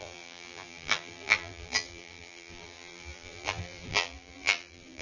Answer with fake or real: fake